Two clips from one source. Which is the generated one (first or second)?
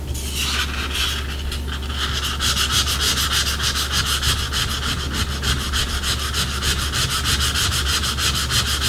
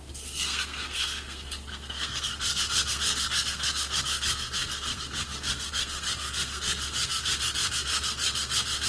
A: second